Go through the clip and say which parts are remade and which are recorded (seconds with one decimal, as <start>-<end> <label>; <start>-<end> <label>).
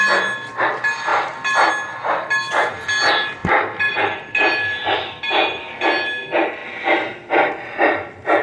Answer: 0.0-1.1 recorded; 1.1-1.7 remade; 1.7-3.4 recorded; 3.4-4.3 remade; 4.3-8.4 recorded